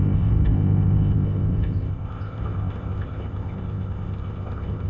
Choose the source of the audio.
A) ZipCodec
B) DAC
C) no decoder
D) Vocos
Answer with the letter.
A